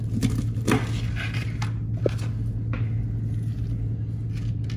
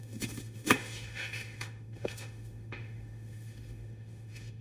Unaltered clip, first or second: first